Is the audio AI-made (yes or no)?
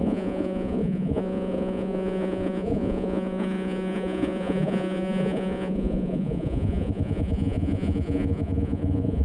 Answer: yes